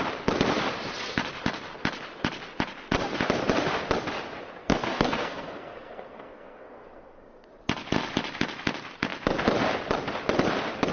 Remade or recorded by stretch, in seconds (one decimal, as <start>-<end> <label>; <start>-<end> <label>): 0.0-4.6 recorded; 4.6-7.5 remade; 7.5-10.9 recorded